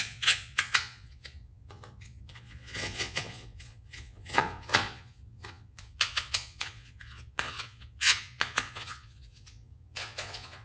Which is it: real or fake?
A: fake